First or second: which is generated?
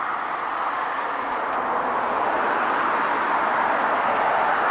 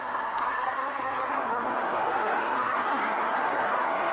second